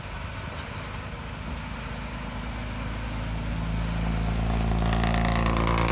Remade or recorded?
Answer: recorded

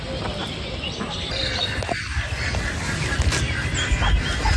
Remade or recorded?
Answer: recorded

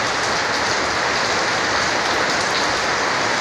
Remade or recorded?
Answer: recorded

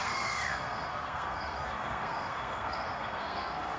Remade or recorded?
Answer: remade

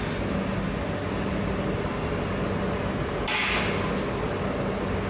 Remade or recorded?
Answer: recorded